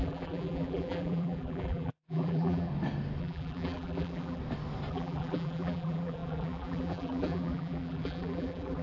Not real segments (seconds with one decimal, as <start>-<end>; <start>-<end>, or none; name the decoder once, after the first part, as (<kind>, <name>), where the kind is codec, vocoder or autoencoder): 0.0-2.7 (vocoder, BigVGAN v2); 3.2-4.4; 4.9-8.8